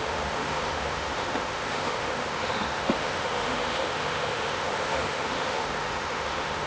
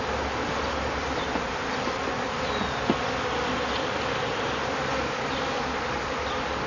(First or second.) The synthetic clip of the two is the first